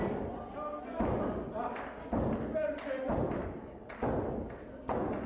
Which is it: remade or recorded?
recorded